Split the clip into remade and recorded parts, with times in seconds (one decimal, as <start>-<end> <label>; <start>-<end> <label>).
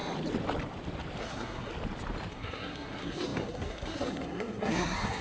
0.0-1.2 recorded; 1.2-1.7 remade; 1.7-2.3 recorded; 2.3-5.2 remade